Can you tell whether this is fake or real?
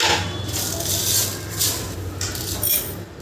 real